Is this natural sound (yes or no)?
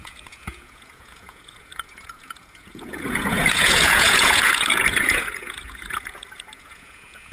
no